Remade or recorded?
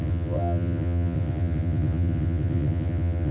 remade